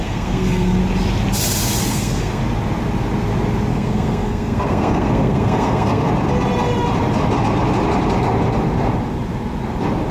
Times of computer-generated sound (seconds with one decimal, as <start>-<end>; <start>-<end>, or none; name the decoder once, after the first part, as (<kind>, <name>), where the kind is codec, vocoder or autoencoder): 0.0-0.8 (codec, SNAC); 1.8-2.4; 3.7-6.1